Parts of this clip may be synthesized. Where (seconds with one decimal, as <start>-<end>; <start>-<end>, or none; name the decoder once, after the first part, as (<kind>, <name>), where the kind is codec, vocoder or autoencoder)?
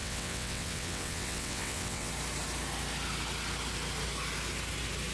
0.0-2.1 (vocoder, WaveNeXt)